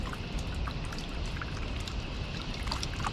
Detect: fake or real fake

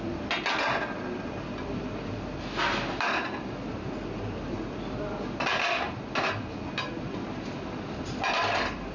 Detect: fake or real real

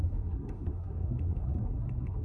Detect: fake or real fake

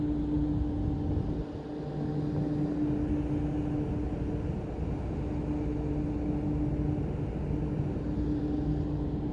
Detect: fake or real real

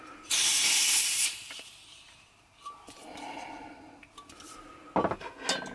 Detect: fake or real real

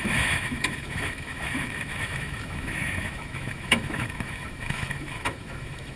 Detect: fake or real fake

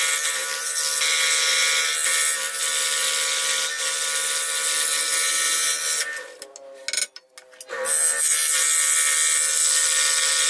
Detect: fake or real real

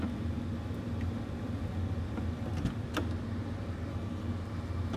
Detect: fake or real real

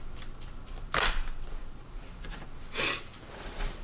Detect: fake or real real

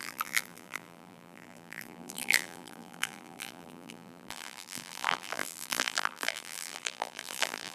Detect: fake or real fake